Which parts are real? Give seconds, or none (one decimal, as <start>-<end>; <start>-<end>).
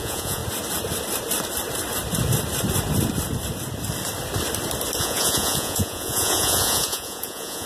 0.4-5.0